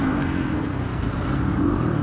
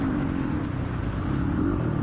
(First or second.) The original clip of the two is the second